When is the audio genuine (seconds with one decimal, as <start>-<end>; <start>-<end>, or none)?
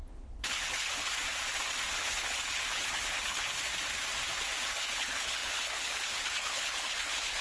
1.2-1.9; 3.7-4.8